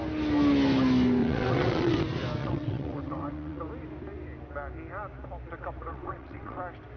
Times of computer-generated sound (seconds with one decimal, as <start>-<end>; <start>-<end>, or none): 1.2-2.0; 2.4-3.6; 5.9-6.6